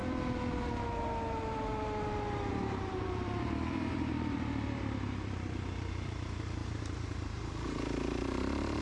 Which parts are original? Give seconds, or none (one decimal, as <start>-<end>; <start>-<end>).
0.0-2.5